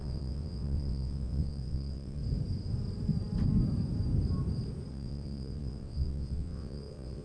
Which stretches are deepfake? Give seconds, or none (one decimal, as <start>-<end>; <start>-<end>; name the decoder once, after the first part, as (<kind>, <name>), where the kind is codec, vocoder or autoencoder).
0.0-2.2 (vocoder, WaveNeXt); 4.9-7.2